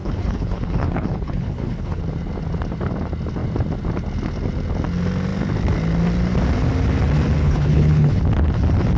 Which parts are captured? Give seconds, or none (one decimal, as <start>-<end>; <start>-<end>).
2.0-7.4; 8.2-9.0